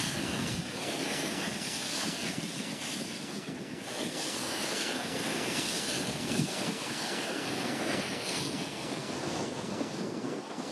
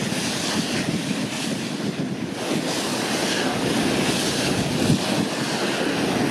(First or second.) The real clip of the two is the second